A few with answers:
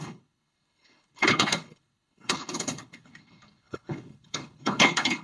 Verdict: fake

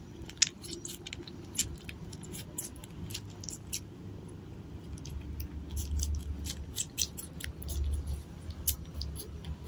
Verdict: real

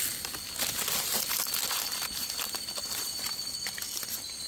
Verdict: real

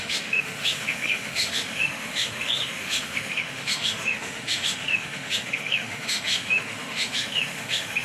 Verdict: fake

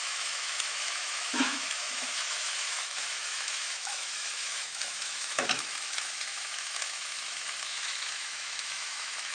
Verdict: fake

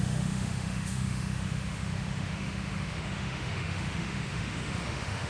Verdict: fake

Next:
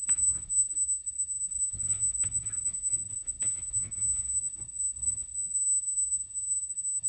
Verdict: fake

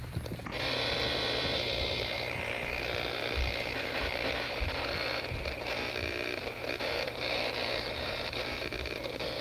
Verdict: fake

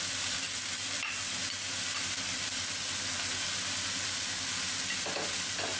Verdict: real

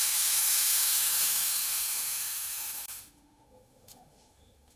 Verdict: fake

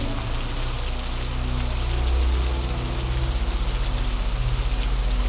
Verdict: real